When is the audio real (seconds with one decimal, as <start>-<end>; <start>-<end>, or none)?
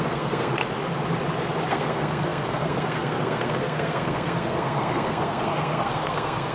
0.6-1.7